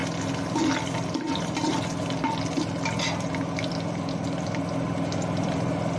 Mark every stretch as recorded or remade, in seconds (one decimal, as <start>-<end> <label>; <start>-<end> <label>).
0.0-6.0 recorded